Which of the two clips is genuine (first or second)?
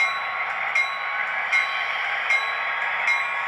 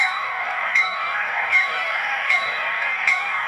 first